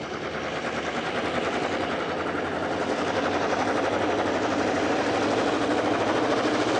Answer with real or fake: real